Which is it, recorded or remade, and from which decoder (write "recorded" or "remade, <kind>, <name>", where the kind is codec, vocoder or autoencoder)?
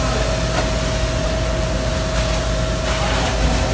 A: recorded